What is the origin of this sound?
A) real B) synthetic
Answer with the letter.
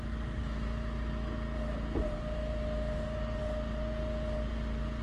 A